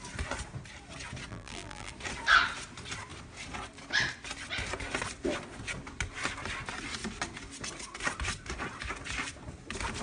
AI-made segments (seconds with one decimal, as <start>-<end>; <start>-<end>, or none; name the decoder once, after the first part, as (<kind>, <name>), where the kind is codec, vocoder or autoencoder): 1.3-1.9 (vocoder, BigVGAN v2)